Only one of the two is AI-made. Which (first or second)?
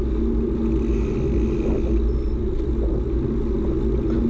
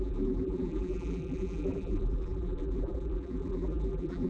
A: second